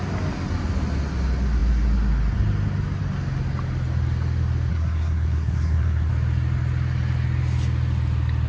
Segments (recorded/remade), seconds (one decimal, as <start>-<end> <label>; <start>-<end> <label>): 0.0-4.7 recorded; 4.7-6.1 remade; 6.1-8.5 recorded